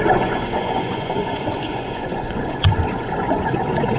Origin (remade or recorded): remade